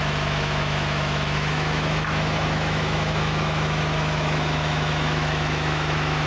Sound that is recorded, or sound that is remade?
remade